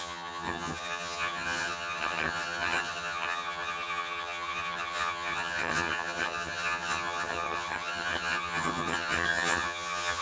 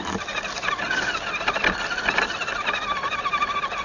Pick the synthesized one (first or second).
first